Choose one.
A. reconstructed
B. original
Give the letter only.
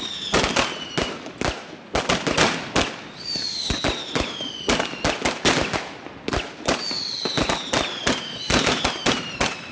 B